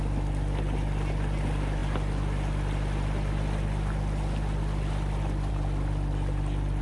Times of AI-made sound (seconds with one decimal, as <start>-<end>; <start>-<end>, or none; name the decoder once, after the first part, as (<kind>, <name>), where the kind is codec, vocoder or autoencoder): none

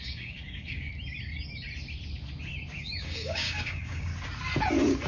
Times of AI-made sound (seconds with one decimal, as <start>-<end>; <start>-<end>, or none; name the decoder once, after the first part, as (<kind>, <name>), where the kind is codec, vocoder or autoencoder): 0.0-0.9 (codec, DAC); 2.8-4.1

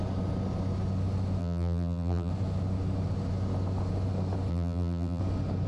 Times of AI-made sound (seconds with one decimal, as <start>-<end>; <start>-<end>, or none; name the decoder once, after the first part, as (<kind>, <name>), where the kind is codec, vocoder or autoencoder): 1.4-2.3 (vocoder, BigVGAN v2); 4.5-5.2

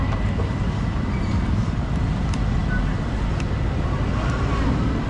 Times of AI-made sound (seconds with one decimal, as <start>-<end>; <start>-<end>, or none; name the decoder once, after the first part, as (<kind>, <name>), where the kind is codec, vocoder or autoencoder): none

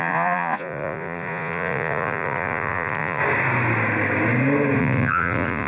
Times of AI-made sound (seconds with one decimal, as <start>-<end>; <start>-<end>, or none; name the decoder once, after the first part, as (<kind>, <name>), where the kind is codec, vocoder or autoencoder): 0.0-3.2 (vocoder, Vocos); 4.8-5.7

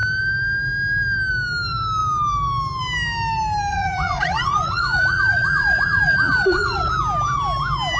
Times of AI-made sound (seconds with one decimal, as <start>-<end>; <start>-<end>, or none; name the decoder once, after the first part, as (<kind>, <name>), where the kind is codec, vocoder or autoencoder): 3.7-6.9 (vocoder, Vocos)